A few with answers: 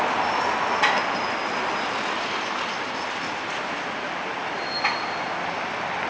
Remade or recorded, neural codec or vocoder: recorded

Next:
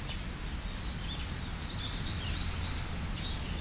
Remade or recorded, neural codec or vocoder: recorded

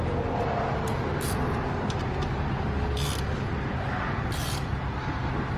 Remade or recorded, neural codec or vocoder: recorded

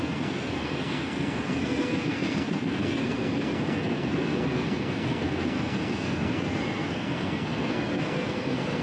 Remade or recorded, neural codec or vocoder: remade, codec, SNAC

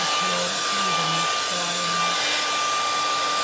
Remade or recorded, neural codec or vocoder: recorded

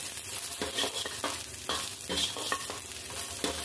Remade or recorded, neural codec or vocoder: recorded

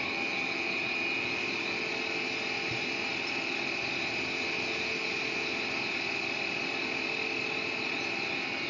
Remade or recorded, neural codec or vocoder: recorded